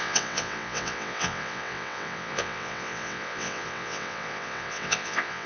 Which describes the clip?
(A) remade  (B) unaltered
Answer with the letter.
A